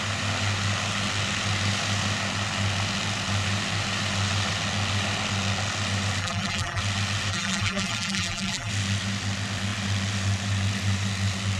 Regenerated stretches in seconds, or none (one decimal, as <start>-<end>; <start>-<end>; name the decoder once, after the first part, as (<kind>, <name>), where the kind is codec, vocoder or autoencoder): 6.2-6.8 (vocoder, BigVGAN v2); 7.3-8.7